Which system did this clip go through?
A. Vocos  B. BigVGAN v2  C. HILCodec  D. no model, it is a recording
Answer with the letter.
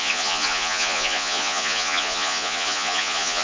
A